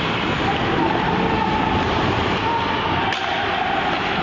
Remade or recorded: recorded